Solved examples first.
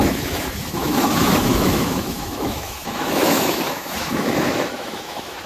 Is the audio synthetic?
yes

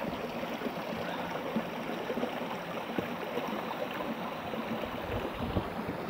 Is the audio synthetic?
no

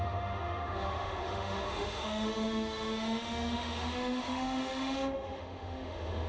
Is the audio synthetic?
yes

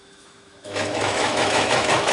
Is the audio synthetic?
yes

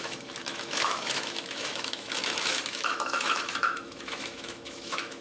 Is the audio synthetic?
yes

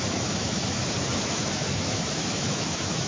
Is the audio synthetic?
yes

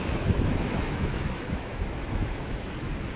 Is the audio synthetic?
yes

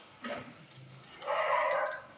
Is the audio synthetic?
no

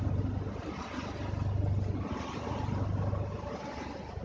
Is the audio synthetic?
no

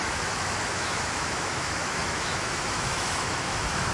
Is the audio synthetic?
yes